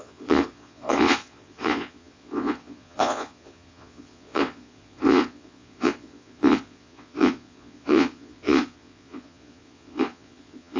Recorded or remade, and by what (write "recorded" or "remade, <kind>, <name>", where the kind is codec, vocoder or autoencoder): remade, vocoder, Vocos